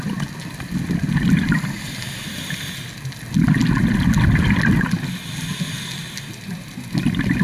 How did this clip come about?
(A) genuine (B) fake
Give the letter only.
A